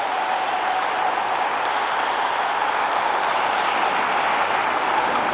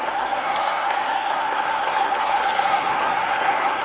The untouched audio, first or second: first